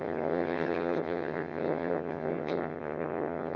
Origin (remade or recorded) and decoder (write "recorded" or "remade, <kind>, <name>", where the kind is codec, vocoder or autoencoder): remade, vocoder, HiFi-GAN